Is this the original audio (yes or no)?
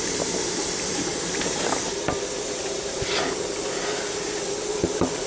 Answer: yes